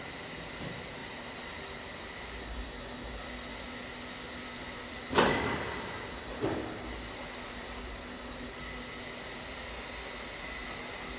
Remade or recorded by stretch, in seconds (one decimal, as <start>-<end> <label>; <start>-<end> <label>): 0.0-11.2 recorded